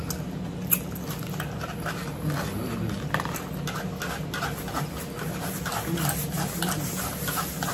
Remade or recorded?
recorded